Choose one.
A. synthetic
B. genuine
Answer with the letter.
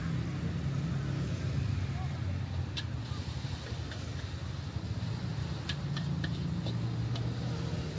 B